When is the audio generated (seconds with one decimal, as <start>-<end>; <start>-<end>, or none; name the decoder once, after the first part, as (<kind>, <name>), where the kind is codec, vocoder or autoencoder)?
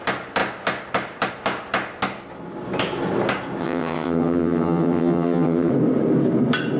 3.6-5.7 (vocoder, HiFi-GAN)